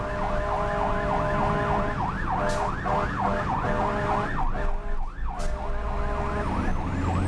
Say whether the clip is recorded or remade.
recorded